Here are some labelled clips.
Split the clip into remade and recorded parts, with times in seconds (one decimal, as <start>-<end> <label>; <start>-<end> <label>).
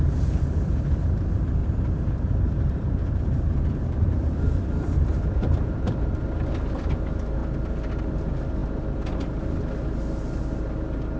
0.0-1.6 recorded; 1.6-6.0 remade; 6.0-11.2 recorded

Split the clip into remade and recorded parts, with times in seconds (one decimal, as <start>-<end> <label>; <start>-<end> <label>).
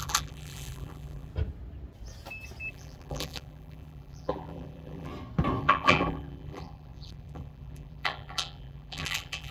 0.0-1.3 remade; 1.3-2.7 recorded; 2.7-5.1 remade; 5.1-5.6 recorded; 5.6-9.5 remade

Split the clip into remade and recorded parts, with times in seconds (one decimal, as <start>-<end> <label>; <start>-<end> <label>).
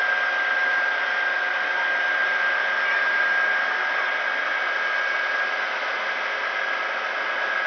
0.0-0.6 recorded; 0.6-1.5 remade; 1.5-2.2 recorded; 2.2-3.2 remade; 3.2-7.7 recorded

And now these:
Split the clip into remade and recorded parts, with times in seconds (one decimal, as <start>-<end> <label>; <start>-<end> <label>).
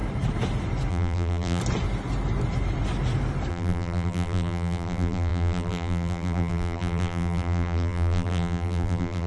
0.0-0.9 recorded; 0.9-1.6 remade; 1.6-3.5 recorded; 3.5-9.3 remade